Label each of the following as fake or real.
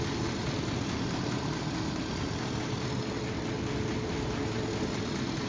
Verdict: real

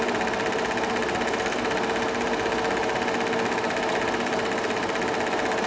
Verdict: real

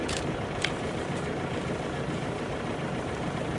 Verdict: fake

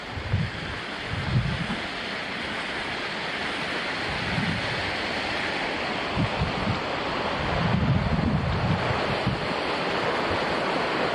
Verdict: real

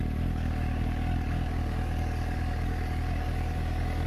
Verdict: fake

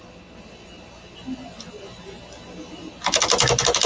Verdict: real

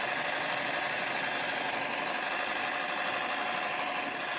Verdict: real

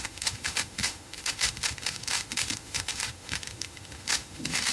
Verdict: fake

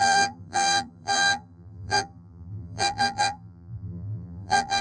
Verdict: fake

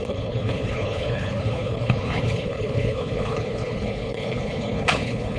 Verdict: fake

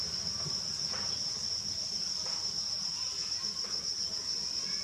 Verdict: fake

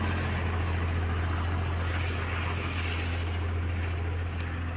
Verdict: real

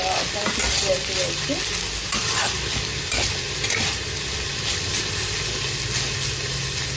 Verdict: real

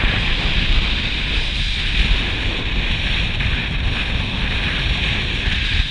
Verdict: real